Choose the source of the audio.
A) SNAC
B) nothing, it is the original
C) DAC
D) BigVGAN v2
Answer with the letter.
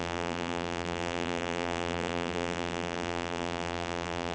D